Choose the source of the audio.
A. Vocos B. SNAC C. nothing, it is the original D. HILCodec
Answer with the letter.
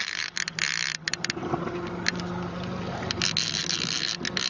C